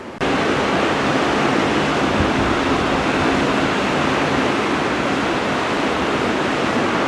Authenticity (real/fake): real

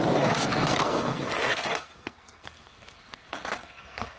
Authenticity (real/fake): fake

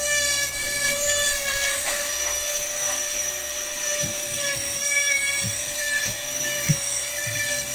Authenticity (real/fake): fake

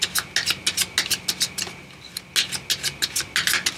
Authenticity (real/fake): real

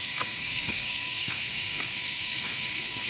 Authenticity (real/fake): fake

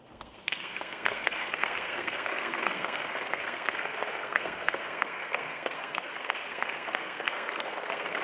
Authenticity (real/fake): fake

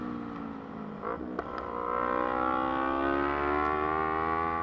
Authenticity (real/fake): real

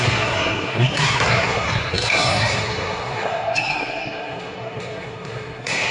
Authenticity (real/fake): fake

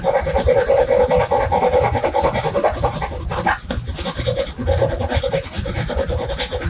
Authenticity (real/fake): real